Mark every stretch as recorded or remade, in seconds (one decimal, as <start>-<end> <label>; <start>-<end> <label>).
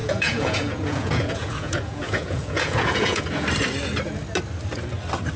0.0-3.2 remade; 3.2-5.4 recorded